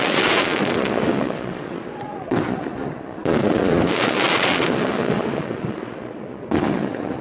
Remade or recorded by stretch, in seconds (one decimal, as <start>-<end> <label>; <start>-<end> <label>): 0.0-7.2 remade

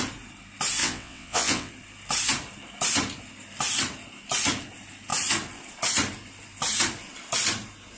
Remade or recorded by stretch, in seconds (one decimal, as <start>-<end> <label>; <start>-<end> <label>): 0.0-0.8 recorded; 0.8-1.7 remade; 1.7-8.0 recorded